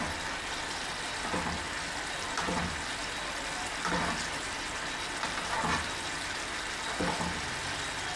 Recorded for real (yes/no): yes